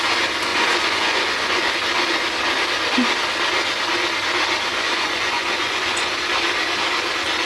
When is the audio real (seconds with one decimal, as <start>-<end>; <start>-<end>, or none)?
0.0-0.5; 1.7-4.7; 6.1-7.5